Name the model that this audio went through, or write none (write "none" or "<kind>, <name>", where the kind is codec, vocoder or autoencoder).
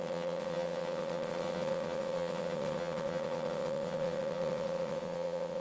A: vocoder, WaveNeXt